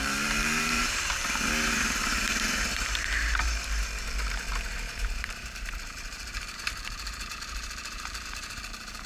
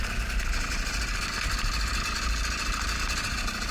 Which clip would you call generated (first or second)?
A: first